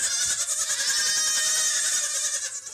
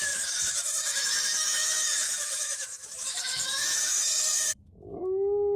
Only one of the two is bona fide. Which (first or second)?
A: first